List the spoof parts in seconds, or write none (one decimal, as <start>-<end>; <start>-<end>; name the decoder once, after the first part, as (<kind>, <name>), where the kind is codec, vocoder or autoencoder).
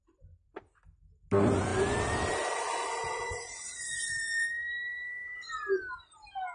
none